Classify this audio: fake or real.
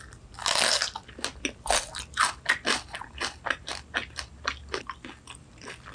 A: real